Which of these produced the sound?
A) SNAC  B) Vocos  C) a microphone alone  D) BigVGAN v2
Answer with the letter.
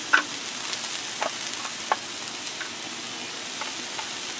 C